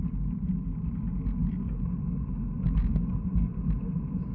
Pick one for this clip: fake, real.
real